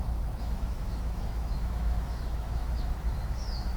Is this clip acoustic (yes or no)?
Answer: no